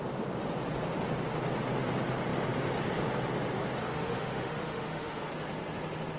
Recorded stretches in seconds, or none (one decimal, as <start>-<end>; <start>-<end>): 0.0-3.8; 5.2-6.2